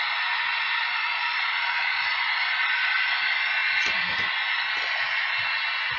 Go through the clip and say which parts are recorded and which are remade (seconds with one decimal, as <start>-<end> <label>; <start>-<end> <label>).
0.0-1.1 recorded; 1.1-2.0 remade; 2.0-6.0 recorded